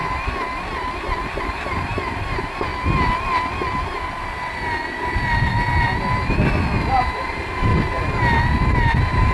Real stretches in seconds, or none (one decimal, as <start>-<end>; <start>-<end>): 0.0-1.4; 2.7-6.9; 7.7-8.7